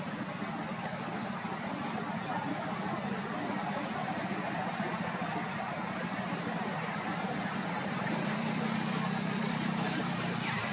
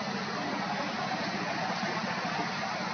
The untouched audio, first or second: second